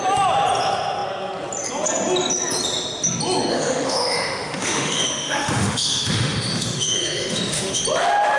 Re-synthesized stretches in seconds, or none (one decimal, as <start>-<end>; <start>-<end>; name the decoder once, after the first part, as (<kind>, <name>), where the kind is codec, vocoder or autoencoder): 3.5-7.8 (autoencoder, DAC-VAE)